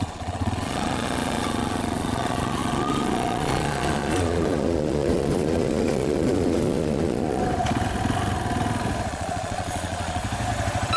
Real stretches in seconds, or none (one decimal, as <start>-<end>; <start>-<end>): 7.4-9.1; 10.2-11.0